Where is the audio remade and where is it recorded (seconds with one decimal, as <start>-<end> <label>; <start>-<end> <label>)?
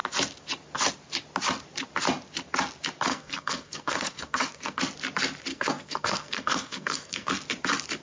0.0-3.1 recorded; 3.1-4.8 remade; 4.8-5.5 recorded; 5.5-7.3 remade; 7.3-8.0 recorded